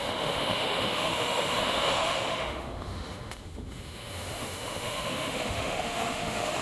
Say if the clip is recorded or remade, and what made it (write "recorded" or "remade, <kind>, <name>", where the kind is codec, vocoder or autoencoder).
remade, autoencoder, DAC-VAE